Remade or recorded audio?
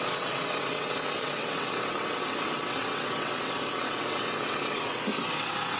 remade